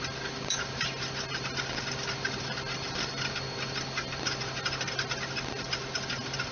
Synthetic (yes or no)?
no